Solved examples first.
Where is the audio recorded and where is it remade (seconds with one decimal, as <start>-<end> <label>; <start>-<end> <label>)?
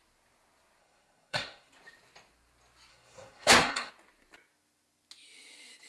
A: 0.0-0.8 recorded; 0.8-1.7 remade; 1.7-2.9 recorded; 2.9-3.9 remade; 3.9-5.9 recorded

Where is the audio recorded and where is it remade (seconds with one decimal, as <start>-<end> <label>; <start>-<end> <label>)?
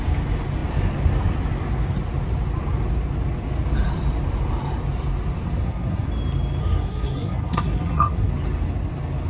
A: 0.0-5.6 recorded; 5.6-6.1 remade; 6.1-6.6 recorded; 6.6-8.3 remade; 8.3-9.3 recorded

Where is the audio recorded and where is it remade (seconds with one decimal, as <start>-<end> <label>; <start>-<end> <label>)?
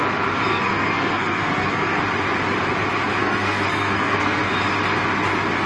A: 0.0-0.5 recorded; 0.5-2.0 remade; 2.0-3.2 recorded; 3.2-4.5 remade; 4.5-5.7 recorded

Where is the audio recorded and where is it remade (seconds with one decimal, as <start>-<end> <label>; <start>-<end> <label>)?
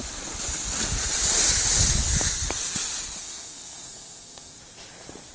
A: 0.0-3.2 recorded; 3.2-4.6 remade; 4.6-5.3 recorded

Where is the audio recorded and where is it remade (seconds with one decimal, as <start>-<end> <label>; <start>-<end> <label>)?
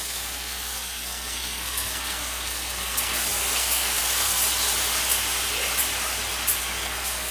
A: 0.0-4.4 remade; 4.4-6.6 recorded; 6.6-7.3 remade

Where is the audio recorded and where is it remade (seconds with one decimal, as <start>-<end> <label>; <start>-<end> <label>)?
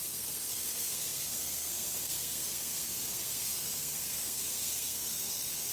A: 0.0-5.7 remade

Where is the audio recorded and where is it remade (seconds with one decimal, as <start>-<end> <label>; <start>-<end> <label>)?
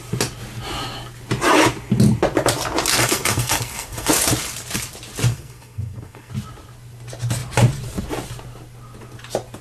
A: 0.0-2.9 recorded; 2.9-4.1 remade; 4.1-5.3 recorded; 5.3-6.3 remade; 6.3-9.6 recorded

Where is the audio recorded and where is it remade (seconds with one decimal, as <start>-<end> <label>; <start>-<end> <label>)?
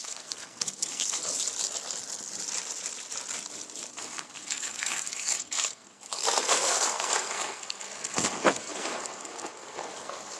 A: 0.0-1.2 remade; 1.2-3.9 recorded; 3.9-10.4 remade